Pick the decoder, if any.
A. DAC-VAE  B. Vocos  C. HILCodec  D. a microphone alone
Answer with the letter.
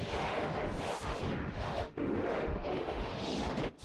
A